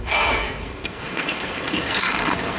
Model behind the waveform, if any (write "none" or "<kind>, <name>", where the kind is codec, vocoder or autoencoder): codec, SNAC